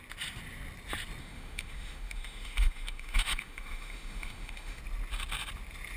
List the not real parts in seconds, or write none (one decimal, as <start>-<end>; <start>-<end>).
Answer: 1.2-4.8